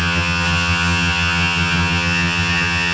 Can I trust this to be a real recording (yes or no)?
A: no